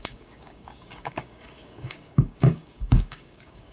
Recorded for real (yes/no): no